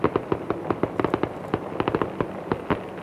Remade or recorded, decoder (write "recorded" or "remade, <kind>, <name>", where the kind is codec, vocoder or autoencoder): recorded